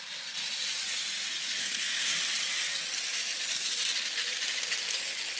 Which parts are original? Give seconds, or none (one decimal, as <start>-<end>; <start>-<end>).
0.0-1.6; 2.1-5.4

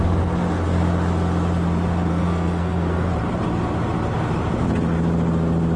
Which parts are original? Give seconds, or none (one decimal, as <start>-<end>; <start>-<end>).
0.0-2.1; 3.1-5.8

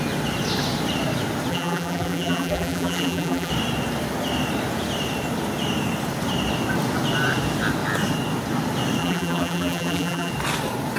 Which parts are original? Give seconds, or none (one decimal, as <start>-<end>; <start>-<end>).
0.0-1.5; 3.5-9.0; 10.3-11.0

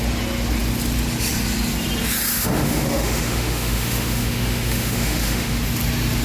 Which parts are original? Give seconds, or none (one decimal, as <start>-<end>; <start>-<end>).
0.0-2.3; 5.6-6.2

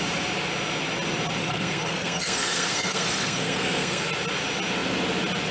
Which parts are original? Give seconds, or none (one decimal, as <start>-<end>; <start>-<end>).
0.0-1.4; 4.0-5.5

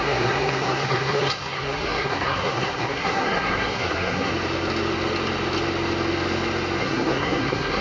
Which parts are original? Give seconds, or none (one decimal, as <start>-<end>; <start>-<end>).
4.3-6.8

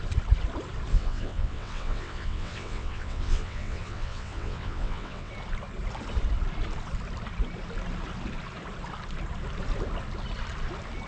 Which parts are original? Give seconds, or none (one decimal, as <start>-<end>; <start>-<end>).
0.0-0.9; 5.3-11.1

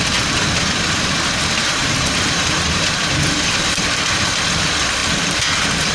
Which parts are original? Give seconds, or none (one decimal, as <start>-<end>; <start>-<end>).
0.0-1.6; 3.9-5.9